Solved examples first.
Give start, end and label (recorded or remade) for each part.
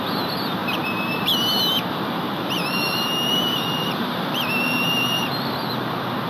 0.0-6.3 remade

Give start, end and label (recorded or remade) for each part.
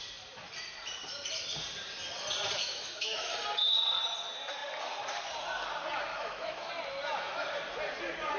0.0-2.6 recorded; 2.6-3.3 remade; 3.3-6.1 recorded; 6.1-6.7 remade; 6.7-8.4 recorded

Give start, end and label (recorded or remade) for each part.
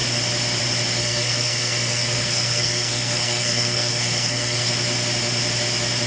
0.0-1.0 recorded; 1.0-4.7 remade; 4.7-6.1 recorded